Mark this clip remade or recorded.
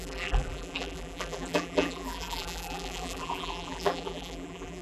remade